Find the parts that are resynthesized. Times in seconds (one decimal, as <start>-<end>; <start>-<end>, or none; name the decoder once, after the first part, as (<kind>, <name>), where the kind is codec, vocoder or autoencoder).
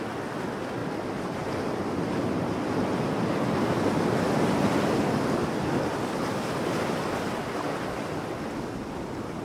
none